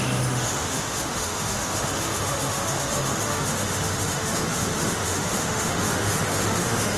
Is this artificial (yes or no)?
yes